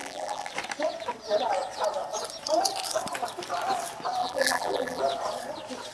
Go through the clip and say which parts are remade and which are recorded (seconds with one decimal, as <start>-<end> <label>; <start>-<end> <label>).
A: 0.0-0.5 remade; 0.5-4.2 recorded; 4.2-5.0 remade; 5.0-5.9 recorded